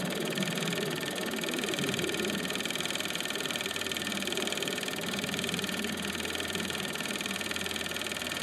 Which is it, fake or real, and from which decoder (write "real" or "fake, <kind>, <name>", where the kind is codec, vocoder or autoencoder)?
fake, vocoder, BigVGAN v2